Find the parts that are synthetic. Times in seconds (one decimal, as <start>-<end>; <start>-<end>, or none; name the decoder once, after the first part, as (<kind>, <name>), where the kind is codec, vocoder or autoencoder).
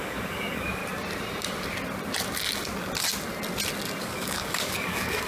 0.0-0.8 (codec, DAC); 4.0-5.3